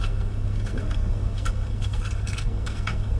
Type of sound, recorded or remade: remade